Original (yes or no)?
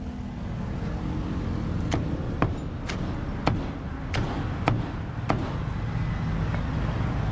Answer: yes